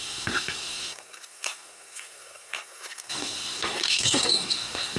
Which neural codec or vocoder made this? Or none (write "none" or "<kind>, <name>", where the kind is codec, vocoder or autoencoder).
codec, SNAC